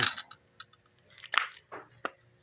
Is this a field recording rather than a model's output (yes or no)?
yes